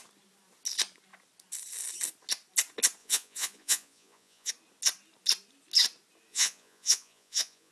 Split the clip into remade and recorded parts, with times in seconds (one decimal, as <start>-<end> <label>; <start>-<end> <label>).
0.0-3.0 recorded; 3.0-4.5 remade; 4.5-6.3 recorded; 6.3-7.7 remade